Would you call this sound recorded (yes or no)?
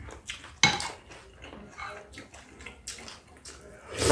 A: yes